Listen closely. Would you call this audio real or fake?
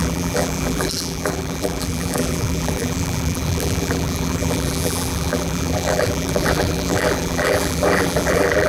fake